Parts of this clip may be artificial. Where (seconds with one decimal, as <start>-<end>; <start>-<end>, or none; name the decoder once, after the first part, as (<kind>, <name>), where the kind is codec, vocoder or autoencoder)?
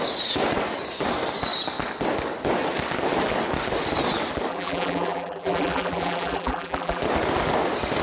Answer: 4.5-7.0 (vocoder, BigVGAN v2)